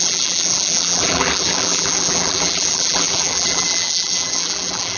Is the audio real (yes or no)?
no